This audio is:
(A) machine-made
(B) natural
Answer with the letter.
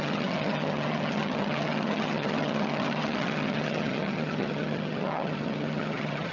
A